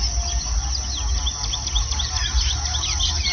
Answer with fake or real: real